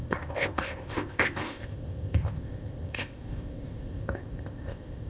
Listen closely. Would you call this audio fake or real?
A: fake